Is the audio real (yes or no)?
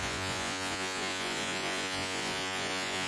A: no